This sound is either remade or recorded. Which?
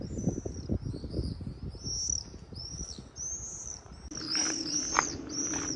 recorded